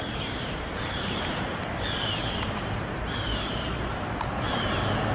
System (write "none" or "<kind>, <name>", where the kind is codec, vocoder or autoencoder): vocoder, BigVGAN v2